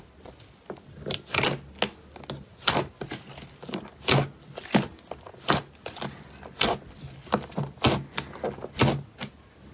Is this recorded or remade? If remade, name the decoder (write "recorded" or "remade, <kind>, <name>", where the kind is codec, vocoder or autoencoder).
recorded